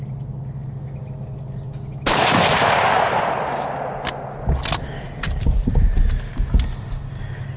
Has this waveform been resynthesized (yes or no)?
no